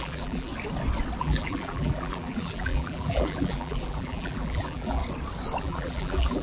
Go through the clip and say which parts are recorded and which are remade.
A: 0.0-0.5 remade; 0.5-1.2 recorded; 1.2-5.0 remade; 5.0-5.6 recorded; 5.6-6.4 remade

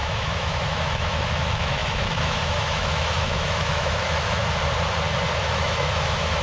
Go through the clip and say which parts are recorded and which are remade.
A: 0.0-4.4 remade; 4.4-5.4 recorded; 5.4-6.4 remade

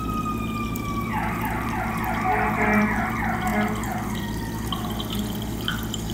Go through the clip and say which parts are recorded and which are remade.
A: 0.0-6.1 recorded

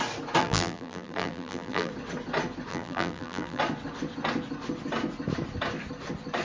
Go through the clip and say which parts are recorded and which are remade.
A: 0.0-0.4 recorded; 0.4-1.9 remade; 1.9-2.7 recorded; 2.7-3.6 remade; 3.6-6.4 recorded

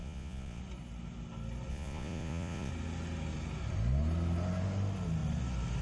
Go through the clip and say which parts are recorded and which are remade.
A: 0.0-0.6 remade; 0.6-1.7 recorded; 1.7-2.7 remade; 2.7-5.8 recorded

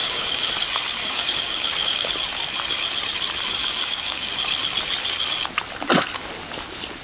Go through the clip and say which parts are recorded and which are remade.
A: 0.0-0.5 remade; 0.5-1.0 recorded; 1.0-2.1 remade; 2.1-3.6 recorded; 3.6-4.3 remade; 4.3-7.0 recorded

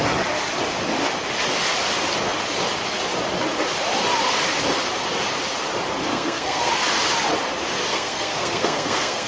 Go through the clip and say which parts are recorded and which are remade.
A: 0.0-6.1 recorded; 6.1-6.7 remade; 6.7-7.9 recorded; 7.9-9.3 remade